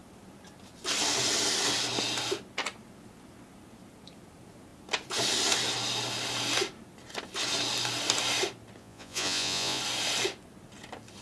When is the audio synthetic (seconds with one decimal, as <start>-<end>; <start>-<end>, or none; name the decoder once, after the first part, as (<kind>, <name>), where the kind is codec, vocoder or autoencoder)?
8.8-9.8 (vocoder, Vocos)